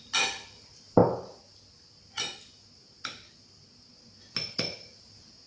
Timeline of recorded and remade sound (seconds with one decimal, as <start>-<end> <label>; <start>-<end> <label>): 0.0-5.5 recorded